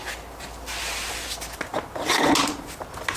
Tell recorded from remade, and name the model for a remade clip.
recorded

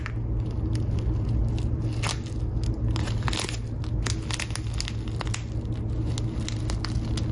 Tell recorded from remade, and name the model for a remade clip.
recorded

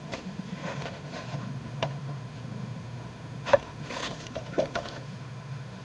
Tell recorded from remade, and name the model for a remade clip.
remade, autoencoder, DAC-VAE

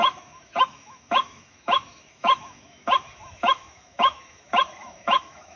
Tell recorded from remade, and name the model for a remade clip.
remade, autoencoder, DAC-VAE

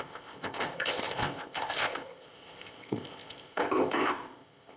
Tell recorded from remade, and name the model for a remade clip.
remade, codec, ZipCodec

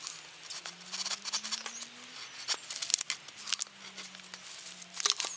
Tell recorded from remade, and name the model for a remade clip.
recorded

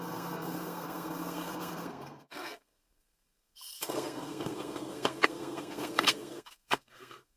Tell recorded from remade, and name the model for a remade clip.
remade, codec, SNAC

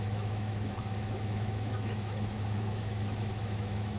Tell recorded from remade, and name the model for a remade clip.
remade, autoencoder, DAC-VAE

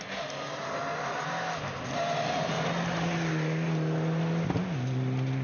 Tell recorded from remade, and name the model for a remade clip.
recorded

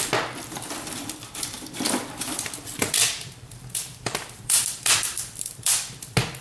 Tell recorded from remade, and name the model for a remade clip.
remade, vocoder, BigVGAN v2